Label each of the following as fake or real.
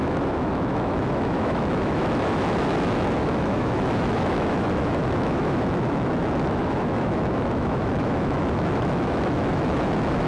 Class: fake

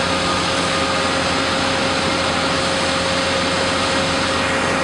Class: real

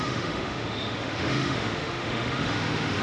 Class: fake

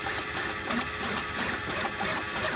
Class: real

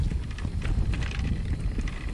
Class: real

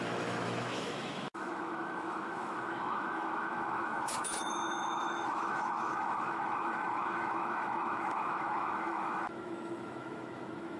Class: fake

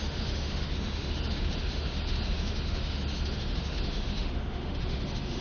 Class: fake